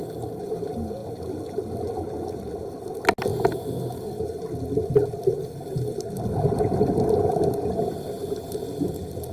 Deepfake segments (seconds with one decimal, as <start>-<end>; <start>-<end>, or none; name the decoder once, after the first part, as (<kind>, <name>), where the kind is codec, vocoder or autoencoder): none